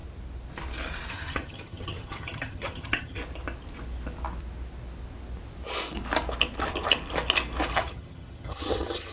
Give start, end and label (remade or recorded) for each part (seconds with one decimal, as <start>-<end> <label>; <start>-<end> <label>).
0.0-1.1 recorded; 1.1-3.2 remade; 3.2-7.7 recorded; 7.7-9.1 remade